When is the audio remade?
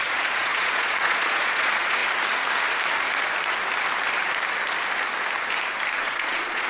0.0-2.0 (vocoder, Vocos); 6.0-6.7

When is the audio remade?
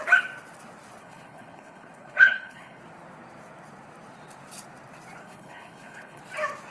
1.0-2.8 (codec, HILCodec); 5.2-6.2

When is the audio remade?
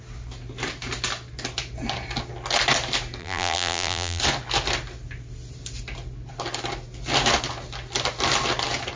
3.2-4.2 (vocoder, BigVGAN v2)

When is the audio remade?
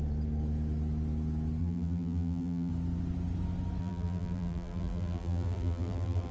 1.6-2.7 (vocoder, BigVGAN v2); 3.8-6.3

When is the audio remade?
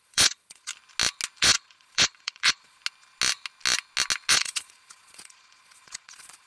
0.0-0.7 (vocoder, Vocos); 1.4-2.8; 4.3-6.5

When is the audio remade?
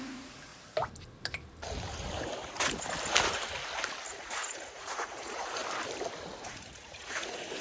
0.0-0.5 (vocoder, Vocos); 4.1-5.6; 6.5-7.6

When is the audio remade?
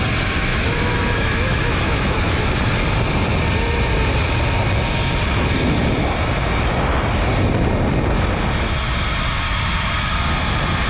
0.5-2.5 (autoencoder, DAC-VAE)